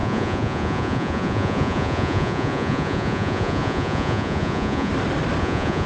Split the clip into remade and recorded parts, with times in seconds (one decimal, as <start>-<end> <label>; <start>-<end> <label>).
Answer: 0.0-4.9 remade; 4.9-5.4 recorded; 5.4-5.9 remade